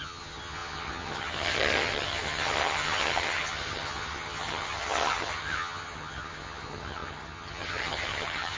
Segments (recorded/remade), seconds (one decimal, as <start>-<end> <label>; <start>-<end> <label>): 0.0-8.6 remade